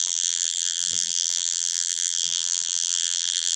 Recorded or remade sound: remade